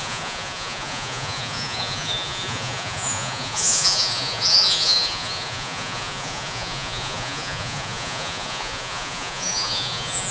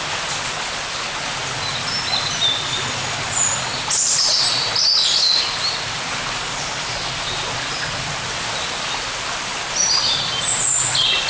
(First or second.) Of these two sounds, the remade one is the first